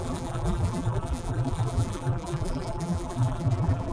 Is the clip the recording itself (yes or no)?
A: no